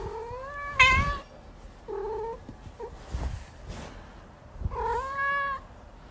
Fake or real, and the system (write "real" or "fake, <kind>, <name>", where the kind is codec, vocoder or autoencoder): real